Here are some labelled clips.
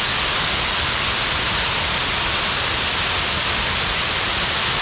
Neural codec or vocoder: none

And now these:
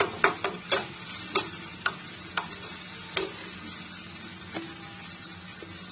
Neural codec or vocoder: none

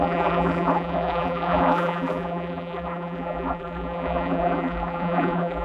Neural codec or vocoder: vocoder, BigVGAN v2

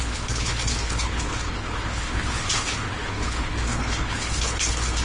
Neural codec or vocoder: codec, HILCodec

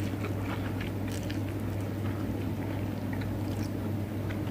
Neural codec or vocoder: none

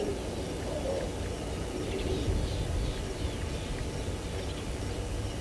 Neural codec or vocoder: none